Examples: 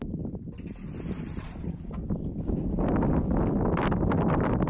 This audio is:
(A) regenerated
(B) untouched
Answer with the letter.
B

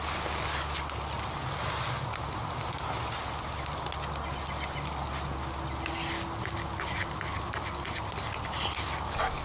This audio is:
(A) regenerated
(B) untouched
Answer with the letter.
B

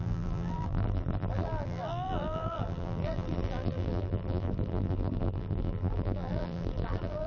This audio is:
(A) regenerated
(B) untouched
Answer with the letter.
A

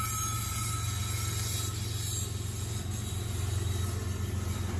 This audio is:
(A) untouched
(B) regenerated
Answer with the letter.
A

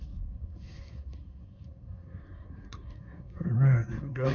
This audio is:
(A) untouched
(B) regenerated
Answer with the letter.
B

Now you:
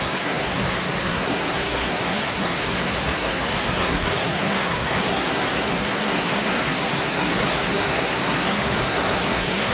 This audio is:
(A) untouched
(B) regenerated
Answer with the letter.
B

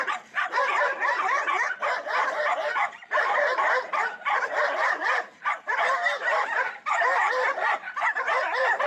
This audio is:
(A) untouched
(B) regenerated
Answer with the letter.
B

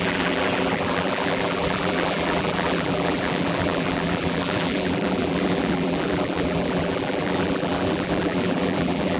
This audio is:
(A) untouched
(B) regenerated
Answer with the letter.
B